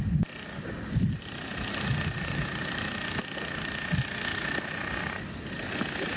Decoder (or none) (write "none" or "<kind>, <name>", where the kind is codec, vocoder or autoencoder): none